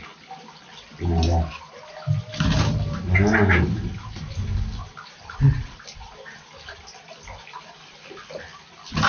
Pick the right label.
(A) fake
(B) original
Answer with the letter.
B